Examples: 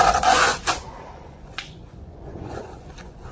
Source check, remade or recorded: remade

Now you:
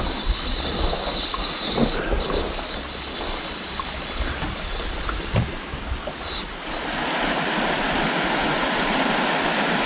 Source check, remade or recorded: recorded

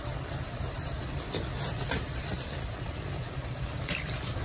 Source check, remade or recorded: remade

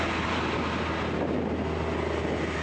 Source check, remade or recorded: recorded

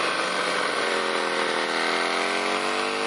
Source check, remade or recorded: recorded